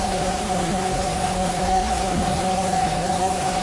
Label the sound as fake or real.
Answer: fake